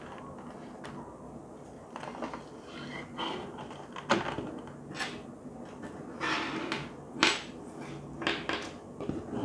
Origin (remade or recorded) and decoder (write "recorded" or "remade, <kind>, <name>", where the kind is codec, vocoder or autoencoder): recorded